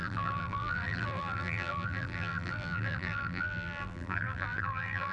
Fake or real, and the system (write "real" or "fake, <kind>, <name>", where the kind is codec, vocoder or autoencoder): fake, vocoder, BigVGAN v2